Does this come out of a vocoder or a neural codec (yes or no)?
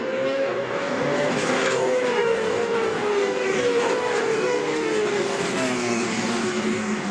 yes